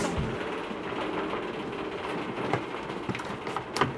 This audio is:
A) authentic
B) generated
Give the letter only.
A